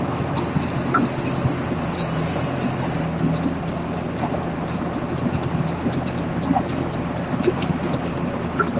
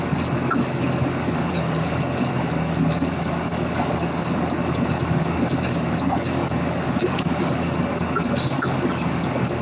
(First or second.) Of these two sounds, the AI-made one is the second